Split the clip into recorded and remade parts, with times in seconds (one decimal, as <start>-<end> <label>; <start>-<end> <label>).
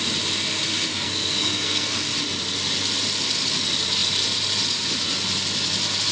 0.0-0.9 recorded; 0.9-2.0 remade; 2.0-6.1 recorded